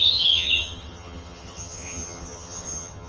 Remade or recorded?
remade